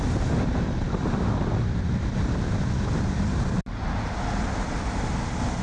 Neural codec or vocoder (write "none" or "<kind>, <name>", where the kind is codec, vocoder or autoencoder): none